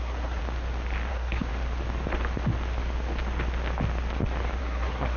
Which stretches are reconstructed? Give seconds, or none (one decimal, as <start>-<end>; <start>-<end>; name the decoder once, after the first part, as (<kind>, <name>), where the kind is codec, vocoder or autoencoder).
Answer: 0.0-0.4 (codec, SNAC); 1.1-1.5; 4.6-5.2

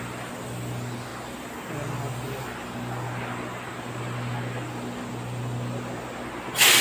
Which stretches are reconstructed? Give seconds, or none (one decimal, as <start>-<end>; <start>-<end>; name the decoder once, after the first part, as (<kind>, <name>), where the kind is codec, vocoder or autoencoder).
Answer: none

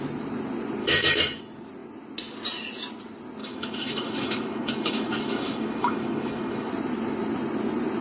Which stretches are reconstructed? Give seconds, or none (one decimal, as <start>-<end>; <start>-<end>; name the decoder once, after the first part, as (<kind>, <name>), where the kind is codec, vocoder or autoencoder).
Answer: 0.8-1.4 (autoencoder, DAC-VAE); 3.4-6.7

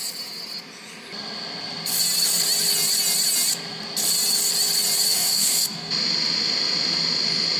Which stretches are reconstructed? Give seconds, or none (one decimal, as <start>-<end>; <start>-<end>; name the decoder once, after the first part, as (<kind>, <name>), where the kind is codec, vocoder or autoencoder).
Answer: 5.1-5.9 (codec, DAC)

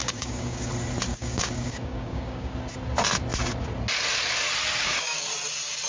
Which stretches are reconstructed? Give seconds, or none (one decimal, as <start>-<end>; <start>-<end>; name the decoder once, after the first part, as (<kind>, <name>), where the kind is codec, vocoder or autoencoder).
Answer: 0.0-0.7 (codec, DAC); 1.1-2.5; 4.8-5.3

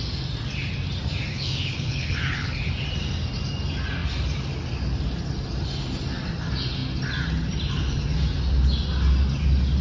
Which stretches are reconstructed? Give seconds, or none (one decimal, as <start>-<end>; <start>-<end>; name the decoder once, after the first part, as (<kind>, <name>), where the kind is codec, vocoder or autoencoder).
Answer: 1.3-2.7 (codec, HILCodec)